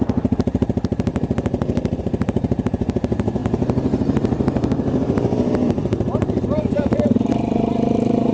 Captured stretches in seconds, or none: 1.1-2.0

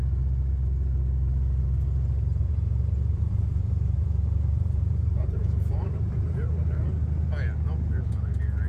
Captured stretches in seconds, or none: 0.0-2.4; 6.8-8.7

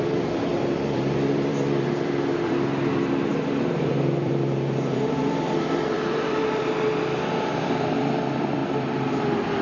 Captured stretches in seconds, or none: none